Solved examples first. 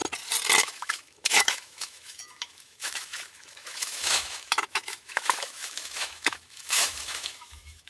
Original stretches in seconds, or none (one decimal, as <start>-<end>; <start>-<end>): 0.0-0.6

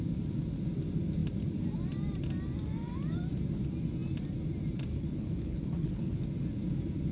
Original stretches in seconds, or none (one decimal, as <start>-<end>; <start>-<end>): 0.0-4.9; 6.2-7.1

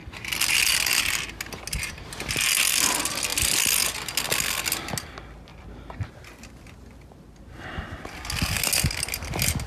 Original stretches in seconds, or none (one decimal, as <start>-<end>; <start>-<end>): 0.0-5.5; 8.5-9.7

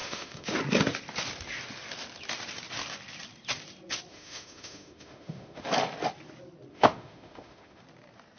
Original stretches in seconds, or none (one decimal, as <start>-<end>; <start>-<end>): 0.6-4.1; 5.7-6.7; 7.8-8.4

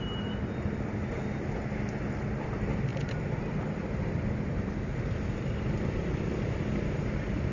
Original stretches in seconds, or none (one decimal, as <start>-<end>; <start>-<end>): 0.0-7.5

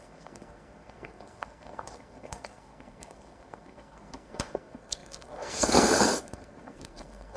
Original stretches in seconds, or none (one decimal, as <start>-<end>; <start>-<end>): none